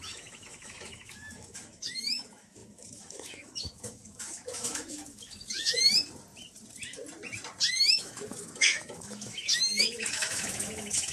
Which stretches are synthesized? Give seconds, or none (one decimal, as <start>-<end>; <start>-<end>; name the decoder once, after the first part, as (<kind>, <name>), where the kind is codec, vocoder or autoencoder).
0.0-5.9 (autoencoder, DAC-VAE); 7.7-11.1